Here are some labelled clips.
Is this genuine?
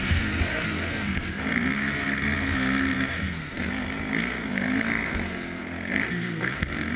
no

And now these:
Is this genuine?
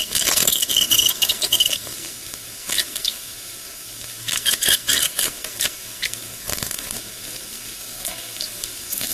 no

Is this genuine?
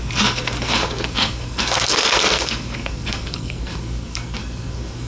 no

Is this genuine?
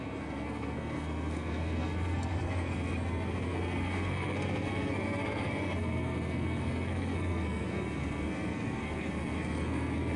no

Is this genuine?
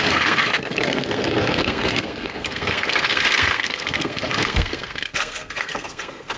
no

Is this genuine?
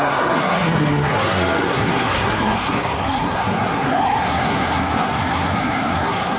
no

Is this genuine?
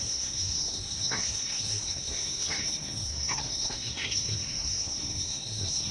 no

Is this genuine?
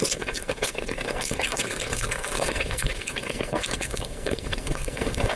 no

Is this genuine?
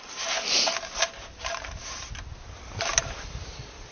yes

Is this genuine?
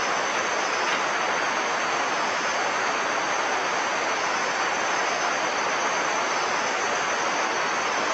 yes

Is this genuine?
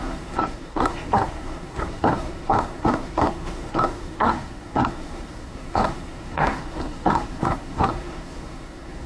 no